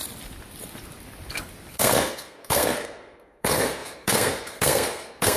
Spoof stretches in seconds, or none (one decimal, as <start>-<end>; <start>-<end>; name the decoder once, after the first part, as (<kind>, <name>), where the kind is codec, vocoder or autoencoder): 1.7-5.4 (codec, SNAC)